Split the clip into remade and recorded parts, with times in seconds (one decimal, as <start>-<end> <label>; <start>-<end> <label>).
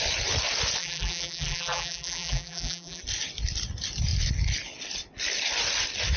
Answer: 0.0-0.8 recorded; 0.8-3.0 remade; 3.0-6.2 recorded